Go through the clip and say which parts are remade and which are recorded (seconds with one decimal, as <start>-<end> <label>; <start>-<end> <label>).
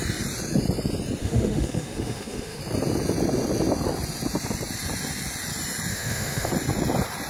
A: 0.0-1.2 recorded; 1.2-2.6 remade; 2.6-5.9 recorded; 5.9-6.5 remade; 6.5-7.3 recorded